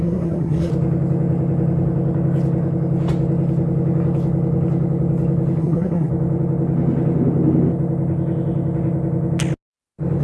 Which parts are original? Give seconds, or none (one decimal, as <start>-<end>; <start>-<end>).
0.7-5.6; 6.1-10.2